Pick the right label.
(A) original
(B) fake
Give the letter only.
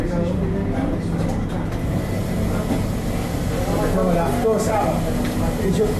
A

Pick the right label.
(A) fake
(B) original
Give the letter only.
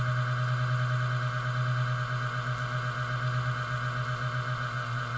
B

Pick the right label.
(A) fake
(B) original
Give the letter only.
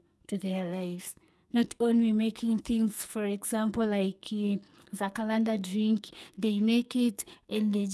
A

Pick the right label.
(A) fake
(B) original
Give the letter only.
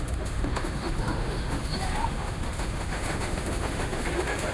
A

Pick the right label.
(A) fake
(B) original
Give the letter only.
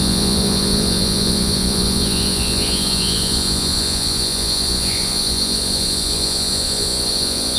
A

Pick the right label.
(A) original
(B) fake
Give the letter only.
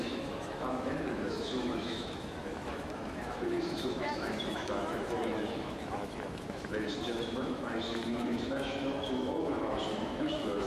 B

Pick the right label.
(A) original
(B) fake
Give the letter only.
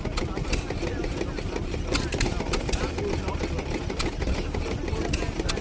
A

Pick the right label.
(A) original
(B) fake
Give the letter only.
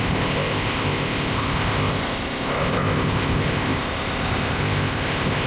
B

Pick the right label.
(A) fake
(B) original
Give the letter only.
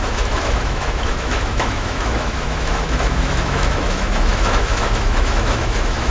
A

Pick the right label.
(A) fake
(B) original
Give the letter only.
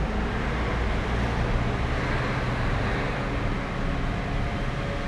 B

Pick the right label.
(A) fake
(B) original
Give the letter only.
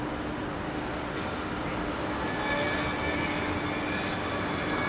B